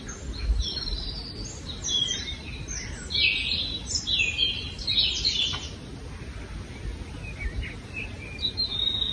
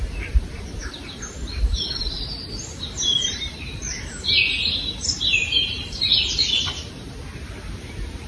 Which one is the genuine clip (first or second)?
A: first